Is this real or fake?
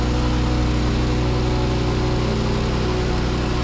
real